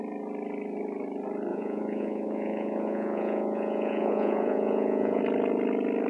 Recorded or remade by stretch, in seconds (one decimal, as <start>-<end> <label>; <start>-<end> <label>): 0.0-1.5 recorded; 1.5-5.2 remade; 5.2-6.1 recorded